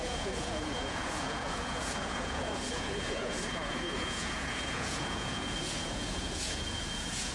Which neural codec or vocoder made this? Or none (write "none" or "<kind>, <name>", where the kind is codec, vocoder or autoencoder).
vocoder, Vocos